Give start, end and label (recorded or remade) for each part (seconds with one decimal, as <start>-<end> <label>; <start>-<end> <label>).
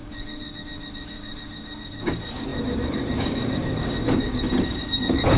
0.0-5.4 remade